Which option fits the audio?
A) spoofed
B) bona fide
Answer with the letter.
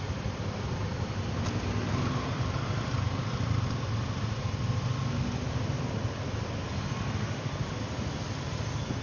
B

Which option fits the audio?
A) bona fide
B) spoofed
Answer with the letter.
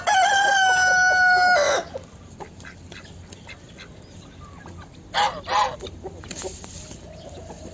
A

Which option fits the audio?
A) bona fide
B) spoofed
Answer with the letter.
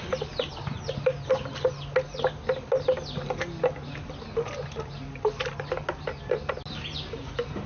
A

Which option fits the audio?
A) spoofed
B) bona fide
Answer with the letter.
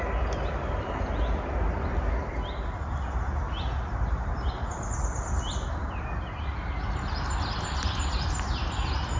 B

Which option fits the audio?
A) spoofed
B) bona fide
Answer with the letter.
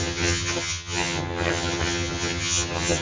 A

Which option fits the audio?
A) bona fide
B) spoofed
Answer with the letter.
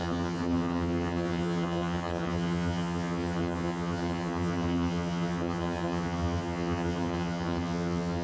B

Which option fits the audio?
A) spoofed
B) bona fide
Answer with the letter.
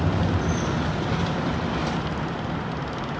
B